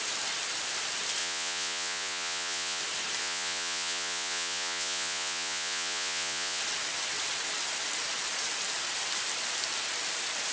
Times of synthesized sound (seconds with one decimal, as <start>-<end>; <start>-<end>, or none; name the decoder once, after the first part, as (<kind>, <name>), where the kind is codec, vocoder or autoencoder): 1.2-2.8 (vocoder, Vocos); 3.2-6.6